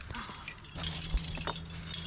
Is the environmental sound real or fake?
real